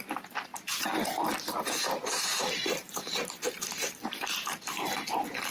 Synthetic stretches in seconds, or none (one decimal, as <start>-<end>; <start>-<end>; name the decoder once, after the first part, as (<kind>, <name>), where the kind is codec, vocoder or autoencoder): 0.5-1.3 (vocoder, BigVGAN v2); 2.3-4.7